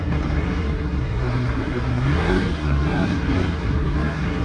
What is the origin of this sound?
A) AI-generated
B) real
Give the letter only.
A